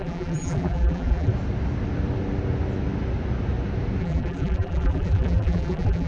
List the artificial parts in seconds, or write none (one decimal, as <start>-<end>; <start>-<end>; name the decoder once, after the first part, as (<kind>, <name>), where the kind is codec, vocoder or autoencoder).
0.0-1.3 (vocoder, BigVGAN v2); 4.0-6.1